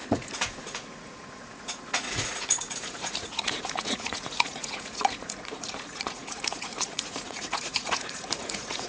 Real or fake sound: fake